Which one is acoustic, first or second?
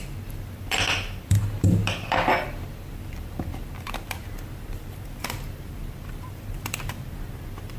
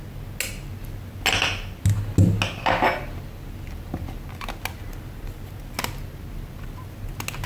second